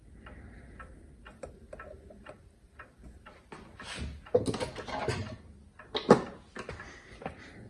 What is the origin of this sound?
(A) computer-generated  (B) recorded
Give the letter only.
B